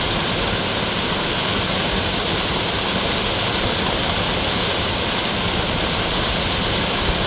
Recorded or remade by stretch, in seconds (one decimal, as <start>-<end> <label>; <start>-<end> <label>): 0.0-7.3 recorded